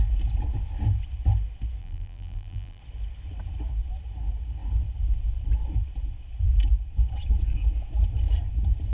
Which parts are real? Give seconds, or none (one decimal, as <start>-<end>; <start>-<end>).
0.0-1.8; 2.8-8.9

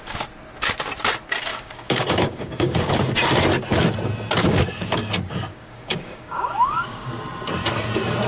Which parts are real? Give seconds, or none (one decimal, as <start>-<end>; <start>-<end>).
0.0-1.5; 2.9-4.4; 7.2-8.3

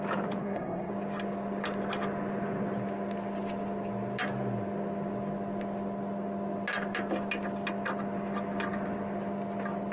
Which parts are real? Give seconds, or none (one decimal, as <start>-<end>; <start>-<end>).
0.0-0.4; 0.9-9.9

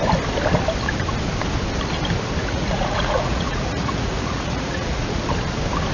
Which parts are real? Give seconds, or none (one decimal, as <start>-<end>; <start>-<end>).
0.0-2.4; 5.2-5.9

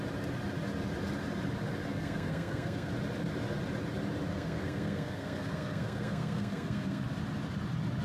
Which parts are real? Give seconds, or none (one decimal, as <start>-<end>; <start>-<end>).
0.0-1.9; 2.9-4.3; 7.0-8.0

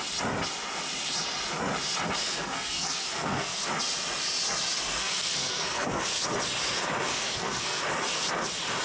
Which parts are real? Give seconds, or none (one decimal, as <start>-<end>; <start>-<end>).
0.0-2.2; 3.7-5.0; 6.0-7.1; 7.8-8.8

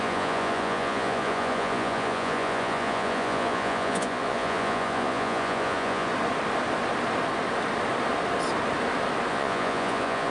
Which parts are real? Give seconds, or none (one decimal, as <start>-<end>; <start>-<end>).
6.1-9.3